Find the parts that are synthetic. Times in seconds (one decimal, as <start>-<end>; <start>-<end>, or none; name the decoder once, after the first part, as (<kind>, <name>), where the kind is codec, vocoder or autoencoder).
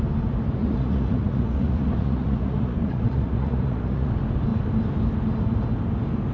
0.6-4.1 (vocoder, Vocos)